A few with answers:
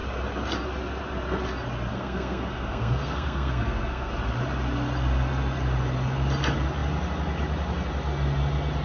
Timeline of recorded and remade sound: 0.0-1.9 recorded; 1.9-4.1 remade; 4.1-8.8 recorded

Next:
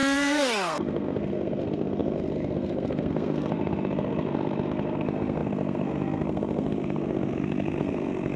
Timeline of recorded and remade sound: 0.0-8.4 remade

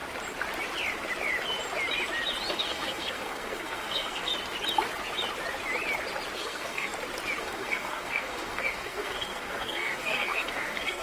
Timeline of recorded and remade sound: 0.0-2.5 recorded; 2.5-4.3 remade; 4.3-6.4 recorded; 6.4-6.9 remade; 6.9-7.4 recorded; 7.4-11.0 remade